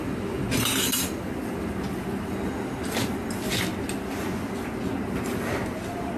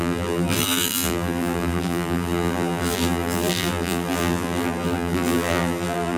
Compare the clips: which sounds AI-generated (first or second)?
second